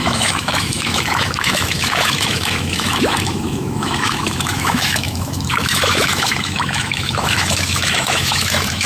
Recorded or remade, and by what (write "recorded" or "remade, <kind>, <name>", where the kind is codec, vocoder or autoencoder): remade, autoencoder, DAC-VAE